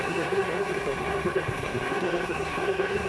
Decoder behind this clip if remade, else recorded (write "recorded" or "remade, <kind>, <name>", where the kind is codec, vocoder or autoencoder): remade, codec, SNAC